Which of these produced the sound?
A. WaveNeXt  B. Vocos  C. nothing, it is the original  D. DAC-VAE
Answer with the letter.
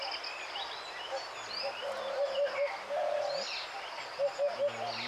C